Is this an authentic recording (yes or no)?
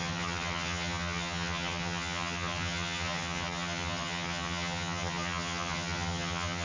no